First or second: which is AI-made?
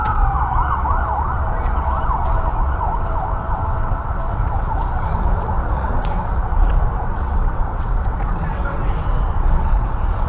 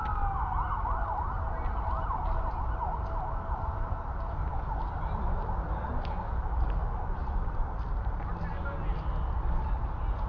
first